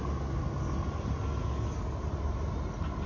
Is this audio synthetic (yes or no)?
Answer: no